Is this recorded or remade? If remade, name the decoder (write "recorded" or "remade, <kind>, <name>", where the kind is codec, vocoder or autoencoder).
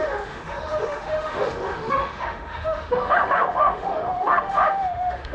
remade, autoencoder, DAC-VAE